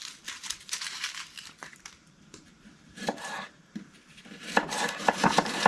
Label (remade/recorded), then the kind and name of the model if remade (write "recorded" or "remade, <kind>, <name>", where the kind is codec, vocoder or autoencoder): remade, vocoder, BigVGAN v2